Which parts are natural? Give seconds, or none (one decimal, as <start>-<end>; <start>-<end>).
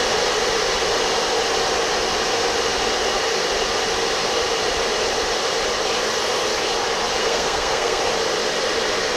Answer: 0.0-7.2; 8.0-9.2